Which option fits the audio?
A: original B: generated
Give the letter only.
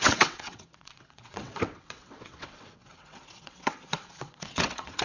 B